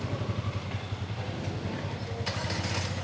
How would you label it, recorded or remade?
recorded